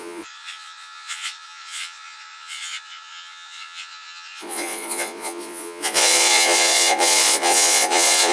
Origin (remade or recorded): remade